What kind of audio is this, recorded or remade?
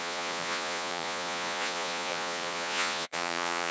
remade